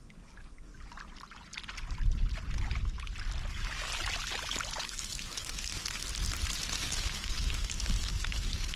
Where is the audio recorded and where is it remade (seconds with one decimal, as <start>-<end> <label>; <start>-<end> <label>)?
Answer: 0.0-0.7 remade; 0.7-3.5 recorded; 3.5-3.9 remade; 3.9-4.8 recorded; 4.8-5.8 remade; 5.8-6.8 recorded; 6.8-8.8 remade